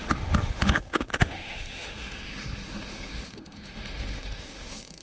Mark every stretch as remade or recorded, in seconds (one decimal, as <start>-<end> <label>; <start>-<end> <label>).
0.0-5.0 remade